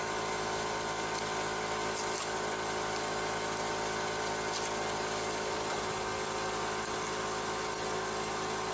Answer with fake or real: real